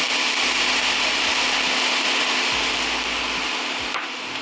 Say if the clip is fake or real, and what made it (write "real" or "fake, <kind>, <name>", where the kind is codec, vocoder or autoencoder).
real